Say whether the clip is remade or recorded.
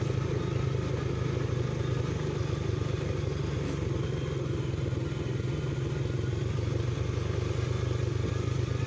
recorded